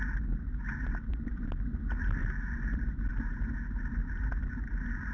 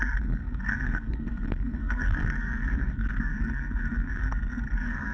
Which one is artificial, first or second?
second